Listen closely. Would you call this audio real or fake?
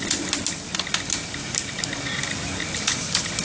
real